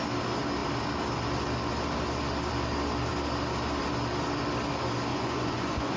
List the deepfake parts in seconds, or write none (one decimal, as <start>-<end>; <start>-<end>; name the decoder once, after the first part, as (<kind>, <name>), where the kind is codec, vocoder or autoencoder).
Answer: 5.1-6.0 (vocoder, Vocos)